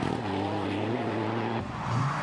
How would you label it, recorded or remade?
remade